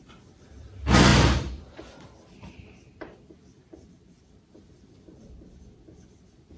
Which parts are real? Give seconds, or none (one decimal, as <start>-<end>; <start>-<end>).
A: none